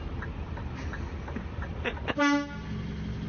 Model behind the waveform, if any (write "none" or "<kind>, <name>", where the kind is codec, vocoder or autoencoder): none